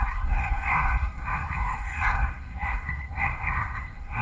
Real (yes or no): no